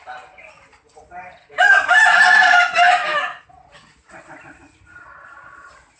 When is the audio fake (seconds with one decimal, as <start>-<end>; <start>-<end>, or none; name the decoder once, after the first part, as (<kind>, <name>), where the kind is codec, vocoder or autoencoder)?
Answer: none